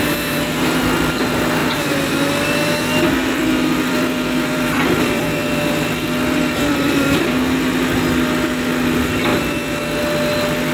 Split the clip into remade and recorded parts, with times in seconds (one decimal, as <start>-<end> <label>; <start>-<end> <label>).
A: 0.0-1.6 recorded; 1.6-2.1 remade; 2.1-3.2 recorded; 3.2-7.3 remade; 7.3-10.7 recorded